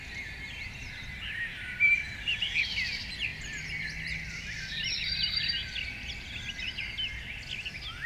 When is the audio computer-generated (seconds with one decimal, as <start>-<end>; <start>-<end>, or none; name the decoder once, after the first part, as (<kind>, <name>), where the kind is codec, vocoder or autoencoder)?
0.8-2.5 (vocoder, BigVGAN v2)